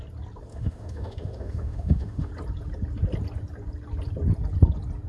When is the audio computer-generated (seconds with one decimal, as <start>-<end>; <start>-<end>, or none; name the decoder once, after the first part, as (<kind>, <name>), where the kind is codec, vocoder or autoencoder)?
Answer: 0.5-2.3 (autoencoder, DAC-VAE)